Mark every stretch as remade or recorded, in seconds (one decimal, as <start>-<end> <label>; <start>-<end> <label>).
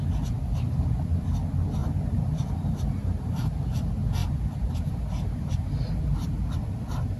0.0-1.8 recorded; 1.8-3.2 remade; 3.2-4.2 recorded; 4.2-6.3 remade; 6.3-7.2 recorded